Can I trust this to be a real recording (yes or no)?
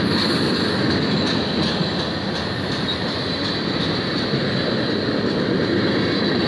yes